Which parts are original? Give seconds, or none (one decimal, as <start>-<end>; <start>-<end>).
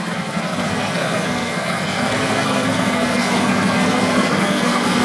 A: none